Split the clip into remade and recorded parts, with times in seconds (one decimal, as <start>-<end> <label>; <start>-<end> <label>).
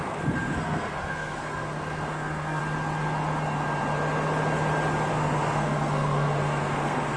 0.0-2.6 remade; 2.6-5.1 recorded; 5.1-7.2 remade